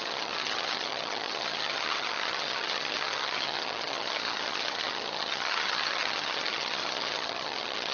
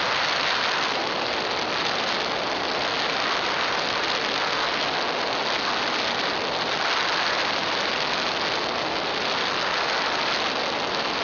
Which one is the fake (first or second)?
first